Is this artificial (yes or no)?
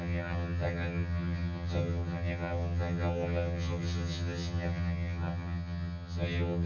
yes